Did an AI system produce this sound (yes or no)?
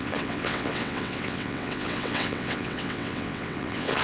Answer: yes